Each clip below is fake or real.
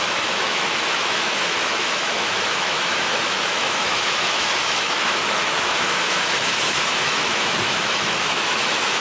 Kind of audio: fake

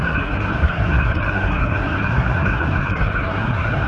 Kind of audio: fake